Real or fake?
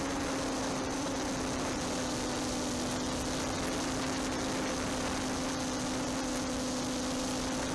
real